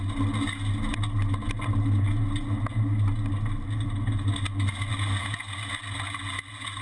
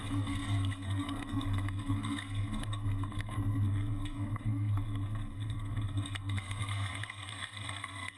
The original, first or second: first